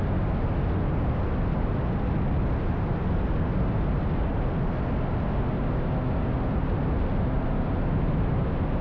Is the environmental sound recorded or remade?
recorded